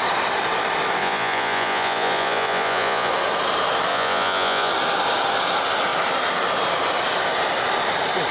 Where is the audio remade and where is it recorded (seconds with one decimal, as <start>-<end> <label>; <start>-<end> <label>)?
0.0-1.0 recorded; 1.0-3.1 remade; 3.1-3.9 recorded; 3.9-4.7 remade; 4.7-8.3 recorded